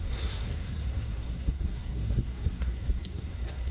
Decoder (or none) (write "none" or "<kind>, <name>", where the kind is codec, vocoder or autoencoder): codec, SNAC